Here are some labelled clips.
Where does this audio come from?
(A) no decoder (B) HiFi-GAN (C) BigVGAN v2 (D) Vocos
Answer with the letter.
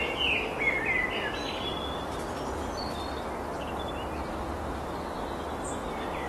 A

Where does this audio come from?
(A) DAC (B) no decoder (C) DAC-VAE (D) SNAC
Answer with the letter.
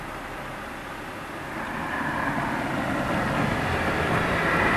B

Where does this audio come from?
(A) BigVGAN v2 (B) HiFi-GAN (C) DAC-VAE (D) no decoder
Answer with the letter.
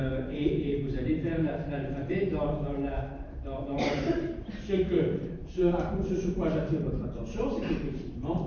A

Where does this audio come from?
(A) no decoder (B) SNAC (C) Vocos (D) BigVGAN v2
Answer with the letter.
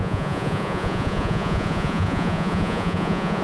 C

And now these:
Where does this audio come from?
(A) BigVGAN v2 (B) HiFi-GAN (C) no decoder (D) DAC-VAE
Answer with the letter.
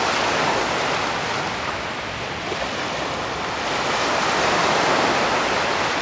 C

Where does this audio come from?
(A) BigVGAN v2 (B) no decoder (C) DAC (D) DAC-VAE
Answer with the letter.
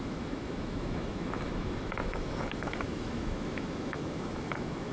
D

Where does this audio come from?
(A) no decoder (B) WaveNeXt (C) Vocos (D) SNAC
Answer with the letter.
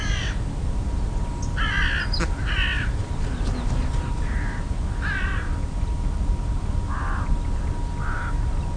A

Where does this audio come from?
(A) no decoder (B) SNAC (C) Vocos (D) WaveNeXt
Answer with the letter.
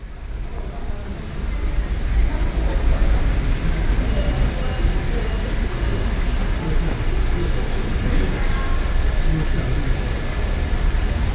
A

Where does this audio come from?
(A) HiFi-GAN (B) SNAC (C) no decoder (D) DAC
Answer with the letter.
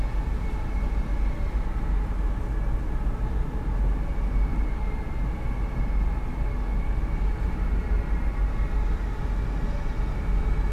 C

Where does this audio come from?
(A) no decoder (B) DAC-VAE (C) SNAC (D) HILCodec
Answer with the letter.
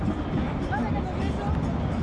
A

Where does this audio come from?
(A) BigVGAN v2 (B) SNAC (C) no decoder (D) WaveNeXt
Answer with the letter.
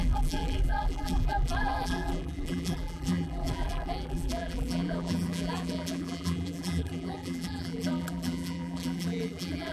A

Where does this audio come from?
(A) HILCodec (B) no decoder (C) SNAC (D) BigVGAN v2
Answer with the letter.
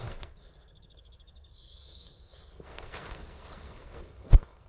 C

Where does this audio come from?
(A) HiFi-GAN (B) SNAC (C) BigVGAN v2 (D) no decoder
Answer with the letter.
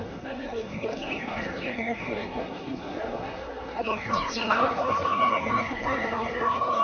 B